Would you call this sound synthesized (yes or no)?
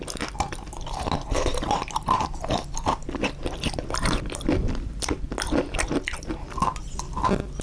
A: no